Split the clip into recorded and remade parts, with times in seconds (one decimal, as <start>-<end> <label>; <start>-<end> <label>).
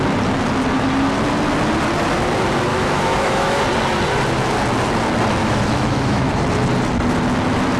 0.0-2.7 recorded; 2.7-3.6 remade; 3.6-5.4 recorded; 5.4-6.4 remade; 6.4-7.8 recorded